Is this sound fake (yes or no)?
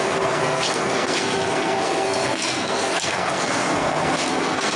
yes